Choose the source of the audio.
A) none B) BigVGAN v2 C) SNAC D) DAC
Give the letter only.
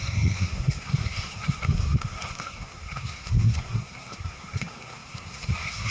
C